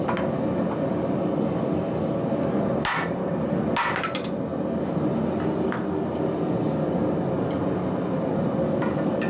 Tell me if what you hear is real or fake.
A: real